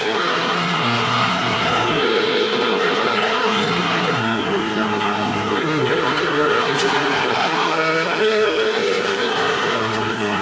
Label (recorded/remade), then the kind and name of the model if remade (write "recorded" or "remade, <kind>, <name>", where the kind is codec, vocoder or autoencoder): remade, codec, SNAC